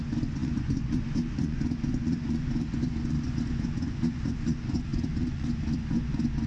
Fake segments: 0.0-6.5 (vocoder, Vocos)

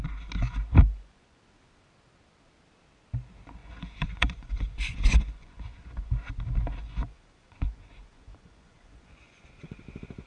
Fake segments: 0.8-1.4 (vocoder, Vocos); 3.6-6.1; 6.8-9.8

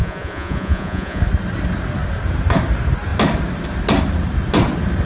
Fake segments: 0.0-1.2 (vocoder, Vocos)

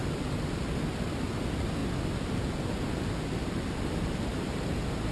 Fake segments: none